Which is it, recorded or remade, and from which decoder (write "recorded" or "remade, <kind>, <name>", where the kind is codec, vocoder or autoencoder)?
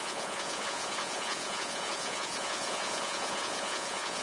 remade, vocoder, Vocos